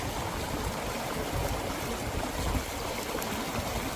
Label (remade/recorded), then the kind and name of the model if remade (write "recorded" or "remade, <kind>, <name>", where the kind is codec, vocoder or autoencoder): recorded